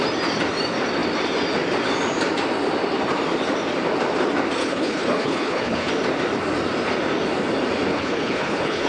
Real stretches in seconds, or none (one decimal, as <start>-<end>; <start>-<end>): 0.0-4.6; 5.9-7.9